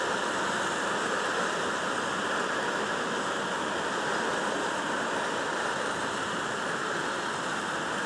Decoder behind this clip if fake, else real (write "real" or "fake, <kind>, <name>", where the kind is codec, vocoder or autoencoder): real